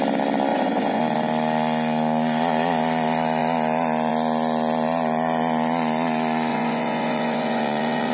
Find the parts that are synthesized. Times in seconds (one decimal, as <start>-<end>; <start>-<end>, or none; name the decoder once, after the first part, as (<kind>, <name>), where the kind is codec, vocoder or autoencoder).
0.5-1.0 (vocoder, Vocos); 6.5-8.1